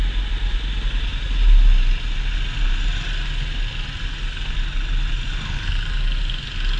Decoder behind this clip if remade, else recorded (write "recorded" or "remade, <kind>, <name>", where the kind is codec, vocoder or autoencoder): recorded